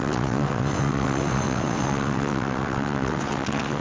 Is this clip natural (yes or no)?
no